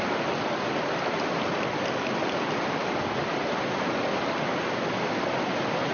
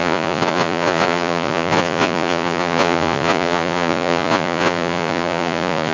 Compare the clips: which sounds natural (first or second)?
first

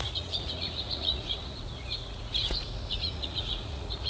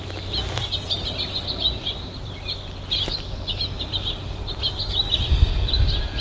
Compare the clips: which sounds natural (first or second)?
second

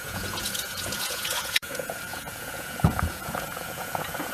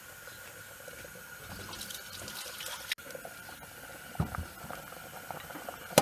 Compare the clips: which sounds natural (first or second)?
second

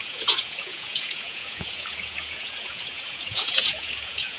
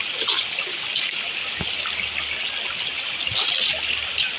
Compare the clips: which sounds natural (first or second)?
second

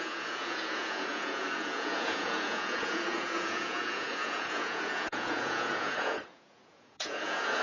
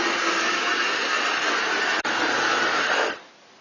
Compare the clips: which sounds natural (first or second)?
second